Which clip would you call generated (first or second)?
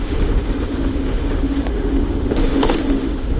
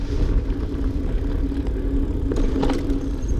first